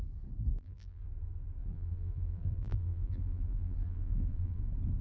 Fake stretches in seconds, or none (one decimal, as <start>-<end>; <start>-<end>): 0.5-1.0; 1.6-4.6